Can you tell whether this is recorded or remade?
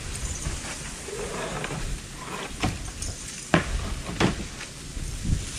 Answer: recorded